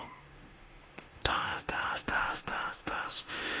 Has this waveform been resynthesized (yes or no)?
yes